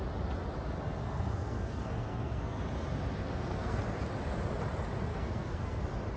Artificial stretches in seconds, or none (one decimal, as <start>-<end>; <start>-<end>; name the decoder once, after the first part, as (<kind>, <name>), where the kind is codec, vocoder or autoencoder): 1.0-2.6 (codec, SNAC); 3.2-3.8; 5.1-5.8